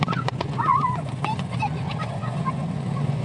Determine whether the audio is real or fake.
fake